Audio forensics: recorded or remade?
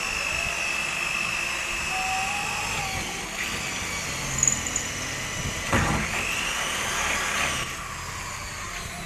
recorded